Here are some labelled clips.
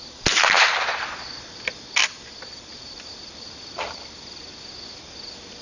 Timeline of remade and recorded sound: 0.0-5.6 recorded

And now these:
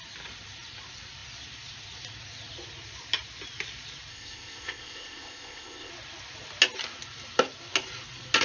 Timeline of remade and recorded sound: 0.0-4.1 recorded; 4.1-5.9 remade; 5.9-8.4 recorded

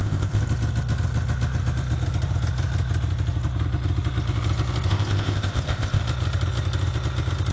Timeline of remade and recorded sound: 0.0-0.4 remade; 0.4-4.9 recorded; 4.9-6.0 remade; 6.0-7.5 recorded

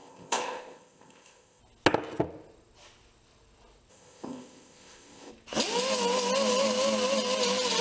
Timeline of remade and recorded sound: 0.0-1.6 remade; 1.6-3.9 recorded; 3.9-5.3 remade; 5.3-7.8 recorded

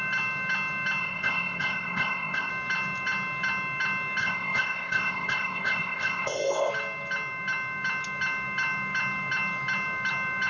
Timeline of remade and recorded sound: 0.0-1.0 recorded; 1.0-2.5 remade; 2.5-4.2 recorded; 4.2-6.7 remade; 6.7-10.5 recorded

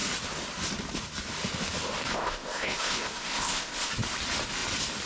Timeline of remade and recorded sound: 0.0-2.1 recorded; 2.1-3.9 remade; 3.9-5.1 recorded

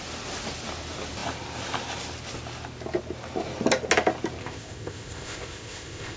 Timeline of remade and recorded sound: 0.0-4.4 recorded; 4.4-6.2 remade

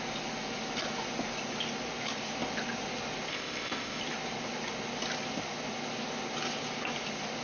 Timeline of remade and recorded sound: 0.0-3.3 recorded; 3.3-4.0 remade; 4.0-7.4 recorded